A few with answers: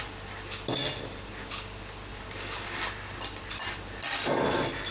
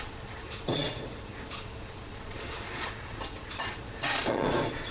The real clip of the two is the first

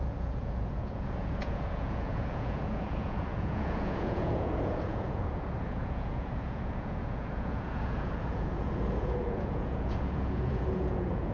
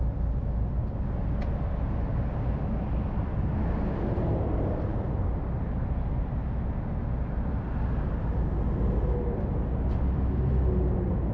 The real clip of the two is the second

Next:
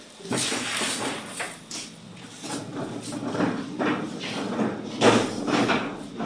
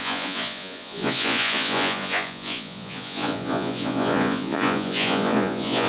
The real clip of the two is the first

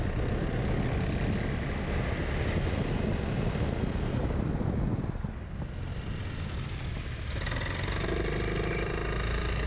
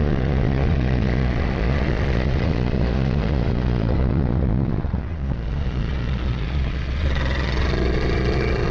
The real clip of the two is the first